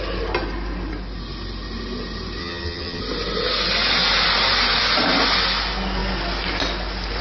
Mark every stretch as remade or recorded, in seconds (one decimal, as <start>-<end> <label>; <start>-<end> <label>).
0.0-2.4 recorded; 2.4-3.0 remade; 3.0-7.2 recorded